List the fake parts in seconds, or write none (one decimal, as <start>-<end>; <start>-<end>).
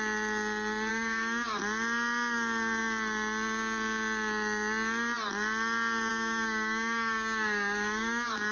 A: 0.9-1.6; 6.1-8.5